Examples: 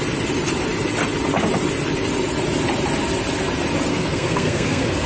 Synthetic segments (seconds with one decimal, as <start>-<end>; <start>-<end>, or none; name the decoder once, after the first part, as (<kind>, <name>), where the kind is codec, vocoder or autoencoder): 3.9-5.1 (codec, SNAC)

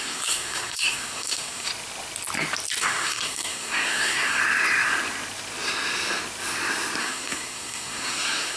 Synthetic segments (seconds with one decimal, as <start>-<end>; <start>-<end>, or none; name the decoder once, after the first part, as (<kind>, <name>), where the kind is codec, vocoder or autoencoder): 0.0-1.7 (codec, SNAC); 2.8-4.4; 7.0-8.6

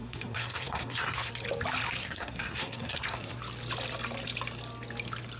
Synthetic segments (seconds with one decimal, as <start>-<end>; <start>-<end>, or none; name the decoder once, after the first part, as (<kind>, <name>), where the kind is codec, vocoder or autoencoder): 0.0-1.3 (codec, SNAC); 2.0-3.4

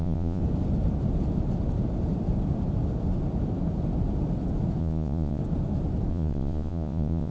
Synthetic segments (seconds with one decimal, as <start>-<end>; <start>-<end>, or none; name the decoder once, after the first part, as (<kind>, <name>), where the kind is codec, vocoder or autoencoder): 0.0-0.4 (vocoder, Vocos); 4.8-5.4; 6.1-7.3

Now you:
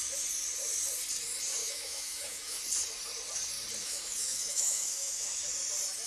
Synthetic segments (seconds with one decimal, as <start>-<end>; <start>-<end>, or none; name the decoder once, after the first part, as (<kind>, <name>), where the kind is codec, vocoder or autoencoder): 1.6-2.6 (autoencoder, DAC-VAE); 3.8-5.4